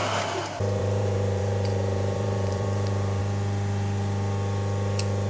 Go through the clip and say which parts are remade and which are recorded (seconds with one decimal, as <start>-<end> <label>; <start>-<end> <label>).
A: 0.0-3.2 remade; 3.2-5.3 recorded